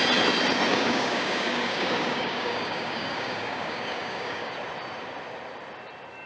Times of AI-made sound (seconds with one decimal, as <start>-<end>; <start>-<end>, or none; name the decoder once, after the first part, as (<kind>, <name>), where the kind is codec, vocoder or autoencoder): 0.7-4.5 (codec, DAC)